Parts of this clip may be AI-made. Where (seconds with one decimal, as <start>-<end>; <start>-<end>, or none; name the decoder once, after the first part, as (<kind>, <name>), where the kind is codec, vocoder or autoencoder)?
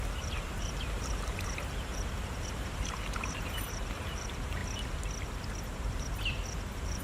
0.0-4.6 (vocoder, BigVGAN v2); 5.6-7.0